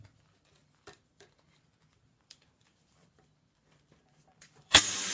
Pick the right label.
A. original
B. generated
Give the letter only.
B